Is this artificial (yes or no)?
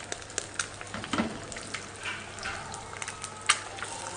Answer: no